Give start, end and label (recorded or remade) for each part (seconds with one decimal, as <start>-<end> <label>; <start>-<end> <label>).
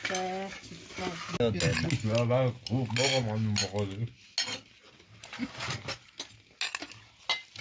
0.0-7.6 recorded